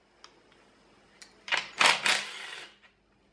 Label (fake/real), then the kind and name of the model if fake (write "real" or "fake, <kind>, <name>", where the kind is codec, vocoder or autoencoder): real